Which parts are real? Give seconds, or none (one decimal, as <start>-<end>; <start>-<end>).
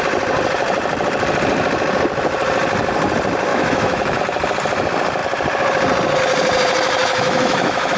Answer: 0.0-3.5; 4.2-7.0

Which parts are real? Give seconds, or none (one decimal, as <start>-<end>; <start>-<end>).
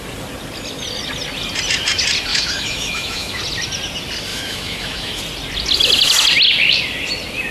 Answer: 0.0-2.3; 3.4-4.3; 5.2-7.5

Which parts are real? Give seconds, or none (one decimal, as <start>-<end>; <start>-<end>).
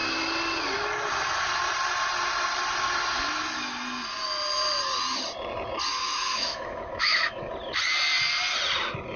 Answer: 0.0-6.0; 7.4-9.2